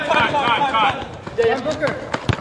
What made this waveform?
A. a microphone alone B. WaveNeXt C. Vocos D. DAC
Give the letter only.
A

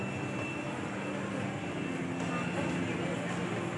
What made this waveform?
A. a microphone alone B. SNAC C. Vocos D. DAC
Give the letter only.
A